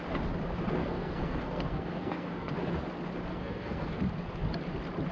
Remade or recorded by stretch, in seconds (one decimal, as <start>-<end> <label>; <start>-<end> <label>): 0.0-0.8 recorded; 0.8-2.5 remade; 2.5-3.3 recorded; 3.3-4.0 remade; 4.0-5.1 recorded